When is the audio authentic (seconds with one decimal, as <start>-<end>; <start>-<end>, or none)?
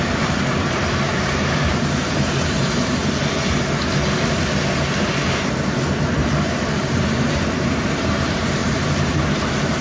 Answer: 3.0-6.8